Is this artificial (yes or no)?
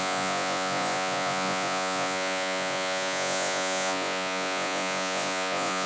yes